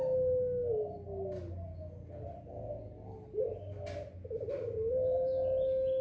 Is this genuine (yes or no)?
yes